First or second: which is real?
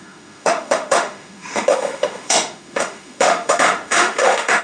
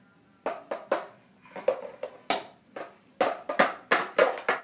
second